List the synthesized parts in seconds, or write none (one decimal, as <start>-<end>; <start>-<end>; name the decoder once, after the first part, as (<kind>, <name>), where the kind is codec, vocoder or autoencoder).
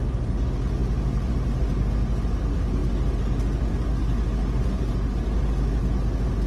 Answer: none